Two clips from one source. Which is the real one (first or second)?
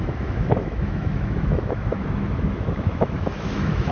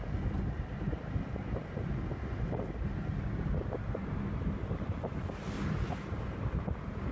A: second